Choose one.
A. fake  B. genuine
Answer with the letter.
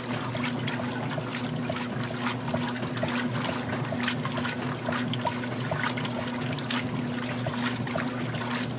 B